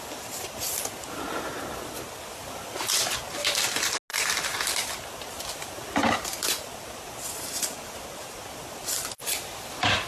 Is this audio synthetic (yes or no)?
no